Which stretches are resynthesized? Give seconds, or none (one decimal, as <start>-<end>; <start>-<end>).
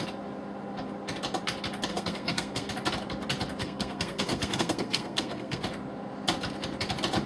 1.9-2.7; 3.6-5.6